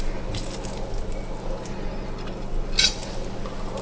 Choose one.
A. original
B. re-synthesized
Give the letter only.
A